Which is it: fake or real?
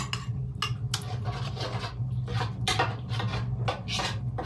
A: real